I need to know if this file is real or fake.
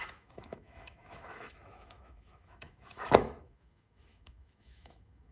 fake